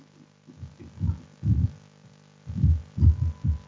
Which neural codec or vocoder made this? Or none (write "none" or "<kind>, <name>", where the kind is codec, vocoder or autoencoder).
none